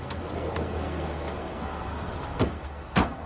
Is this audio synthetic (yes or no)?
yes